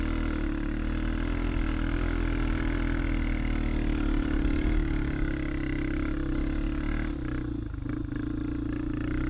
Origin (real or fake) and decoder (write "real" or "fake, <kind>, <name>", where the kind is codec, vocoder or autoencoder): real